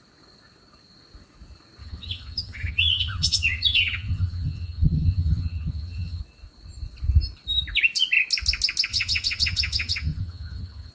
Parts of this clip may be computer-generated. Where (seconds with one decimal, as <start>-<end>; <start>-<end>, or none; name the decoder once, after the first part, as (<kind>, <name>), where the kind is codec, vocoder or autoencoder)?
1.8-6.2 (vocoder, HiFi-GAN); 8.9-10.9